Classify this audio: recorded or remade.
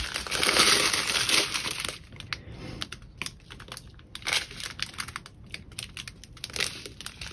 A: recorded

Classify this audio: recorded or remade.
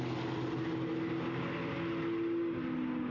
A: recorded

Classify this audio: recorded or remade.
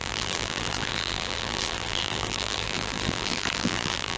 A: remade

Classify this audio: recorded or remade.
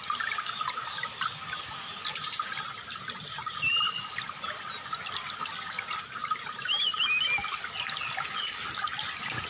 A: recorded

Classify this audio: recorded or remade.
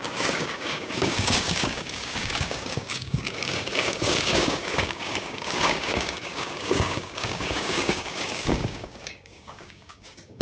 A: remade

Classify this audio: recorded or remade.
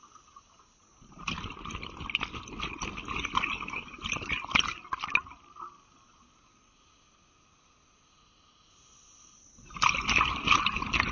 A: recorded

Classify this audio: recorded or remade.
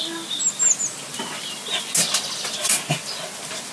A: recorded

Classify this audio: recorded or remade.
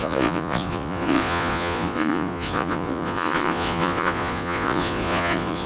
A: remade